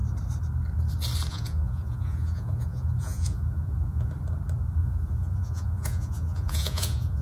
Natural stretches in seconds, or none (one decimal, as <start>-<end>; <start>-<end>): 0.0-1.3; 4.1-4.8